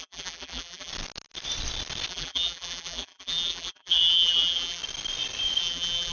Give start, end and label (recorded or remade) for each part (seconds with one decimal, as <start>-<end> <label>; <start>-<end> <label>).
0.0-0.9 remade; 0.9-2.1 recorded; 2.1-4.8 remade; 4.8-5.6 recorded; 5.6-6.1 remade